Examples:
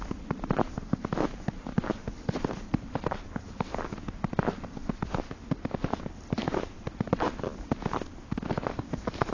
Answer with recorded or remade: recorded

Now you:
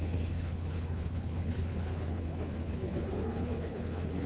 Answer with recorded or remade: remade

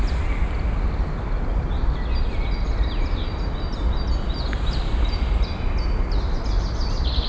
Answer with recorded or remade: recorded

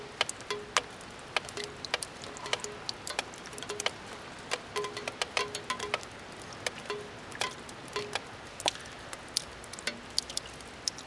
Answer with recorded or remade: recorded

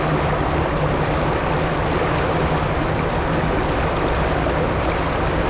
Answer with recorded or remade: recorded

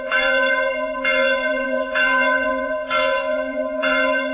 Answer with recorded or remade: remade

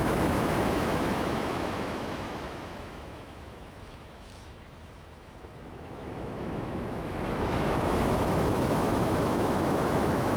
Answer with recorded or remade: remade